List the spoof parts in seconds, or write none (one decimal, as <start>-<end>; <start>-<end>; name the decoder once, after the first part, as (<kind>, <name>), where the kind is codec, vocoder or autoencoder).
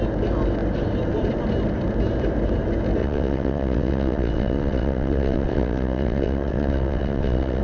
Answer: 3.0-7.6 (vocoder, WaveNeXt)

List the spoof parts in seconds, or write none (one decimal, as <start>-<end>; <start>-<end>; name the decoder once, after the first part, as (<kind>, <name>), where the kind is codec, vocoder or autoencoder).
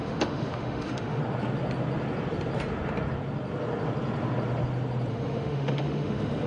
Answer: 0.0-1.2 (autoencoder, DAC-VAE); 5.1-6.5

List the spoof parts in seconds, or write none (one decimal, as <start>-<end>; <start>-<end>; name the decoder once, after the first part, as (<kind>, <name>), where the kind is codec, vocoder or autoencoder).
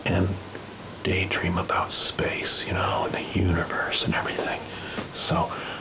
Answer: 2.9-4.8 (codec, DAC); 5.2-5.8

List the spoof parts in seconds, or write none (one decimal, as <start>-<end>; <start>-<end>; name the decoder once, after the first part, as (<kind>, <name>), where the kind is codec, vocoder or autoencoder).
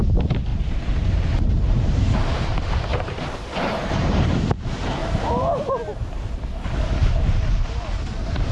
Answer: 0.5-2.3 (vocoder, BigVGAN v2); 2.9-4.5; 5.0-5.7